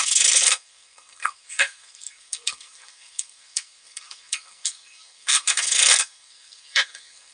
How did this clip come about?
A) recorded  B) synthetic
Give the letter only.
B